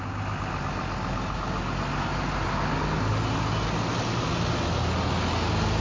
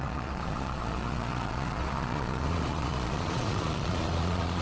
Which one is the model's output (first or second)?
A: second